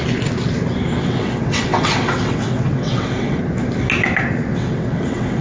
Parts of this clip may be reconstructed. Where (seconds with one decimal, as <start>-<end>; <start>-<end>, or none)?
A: 1.0-3.4; 4.5-5.4